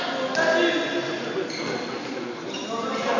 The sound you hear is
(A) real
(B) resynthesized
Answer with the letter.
A